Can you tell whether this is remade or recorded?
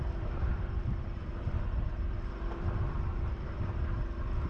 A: remade